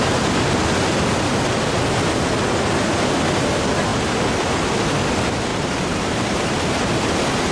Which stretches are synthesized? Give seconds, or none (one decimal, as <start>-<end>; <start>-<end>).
5.5-6.6